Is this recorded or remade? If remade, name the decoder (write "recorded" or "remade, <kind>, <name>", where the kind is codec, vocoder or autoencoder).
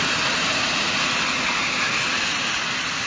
recorded